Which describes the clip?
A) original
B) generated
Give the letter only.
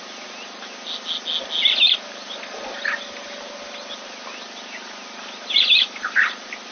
A